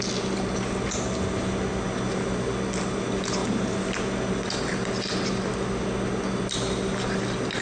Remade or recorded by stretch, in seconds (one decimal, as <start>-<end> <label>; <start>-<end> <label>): 0.0-7.6 recorded